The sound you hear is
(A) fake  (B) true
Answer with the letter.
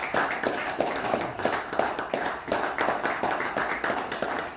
B